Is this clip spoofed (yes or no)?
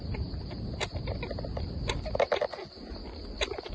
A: no